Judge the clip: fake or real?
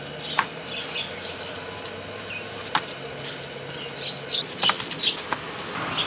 real